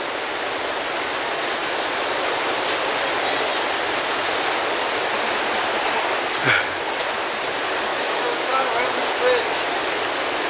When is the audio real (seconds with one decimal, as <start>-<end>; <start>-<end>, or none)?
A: 0.0-7.9; 8.7-10.5